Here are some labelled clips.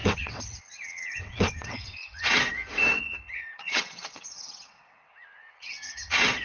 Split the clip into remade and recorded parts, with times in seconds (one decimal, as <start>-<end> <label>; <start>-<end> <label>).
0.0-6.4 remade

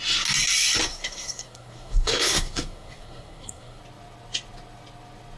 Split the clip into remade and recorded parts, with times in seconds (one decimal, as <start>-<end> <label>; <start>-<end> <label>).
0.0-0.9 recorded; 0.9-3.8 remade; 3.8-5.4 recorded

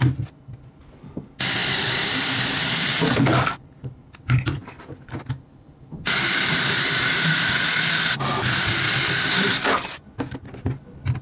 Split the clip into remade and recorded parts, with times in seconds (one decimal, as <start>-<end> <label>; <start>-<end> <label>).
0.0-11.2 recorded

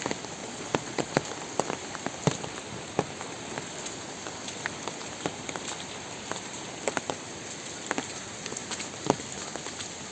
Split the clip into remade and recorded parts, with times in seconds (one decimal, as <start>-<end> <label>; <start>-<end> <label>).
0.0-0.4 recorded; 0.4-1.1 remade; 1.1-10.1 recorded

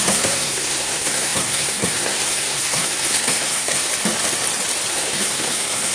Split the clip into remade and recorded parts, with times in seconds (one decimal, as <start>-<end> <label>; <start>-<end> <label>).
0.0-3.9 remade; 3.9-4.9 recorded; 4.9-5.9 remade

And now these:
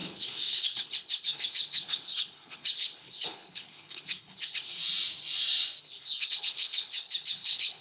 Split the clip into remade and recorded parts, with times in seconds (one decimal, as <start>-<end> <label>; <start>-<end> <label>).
0.0-4.8 remade; 4.8-5.8 recorded; 5.8-7.8 remade

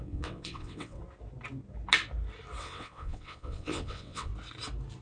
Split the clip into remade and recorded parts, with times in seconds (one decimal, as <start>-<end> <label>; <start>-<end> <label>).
0.0-1.0 remade; 1.0-2.6 recorded; 2.6-4.3 remade; 4.3-5.0 recorded

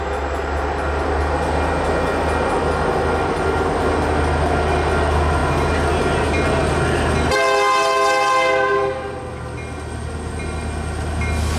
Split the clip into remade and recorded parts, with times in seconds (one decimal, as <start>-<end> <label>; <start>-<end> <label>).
0.0-11.6 recorded